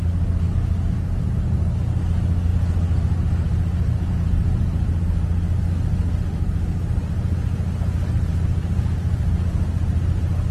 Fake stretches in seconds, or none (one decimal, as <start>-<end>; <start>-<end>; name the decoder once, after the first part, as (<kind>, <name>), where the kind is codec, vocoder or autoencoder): none